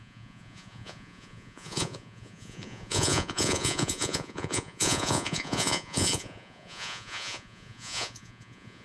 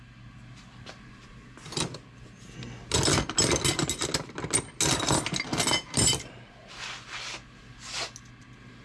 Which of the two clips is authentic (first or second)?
second